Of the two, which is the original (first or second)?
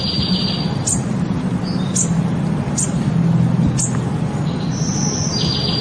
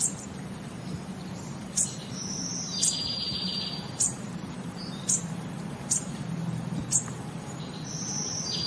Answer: first